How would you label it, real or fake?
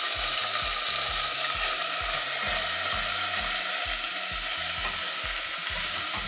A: real